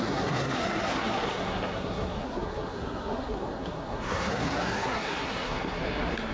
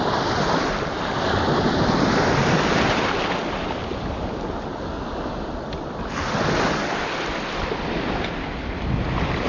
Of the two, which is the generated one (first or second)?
first